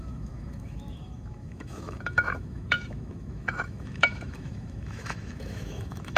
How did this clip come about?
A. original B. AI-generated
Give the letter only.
B